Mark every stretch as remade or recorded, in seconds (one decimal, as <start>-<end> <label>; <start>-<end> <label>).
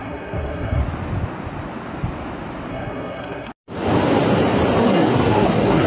0.0-0.8 remade; 0.8-2.7 recorded; 2.7-3.5 remade; 3.5-4.8 recorded; 4.8-5.9 remade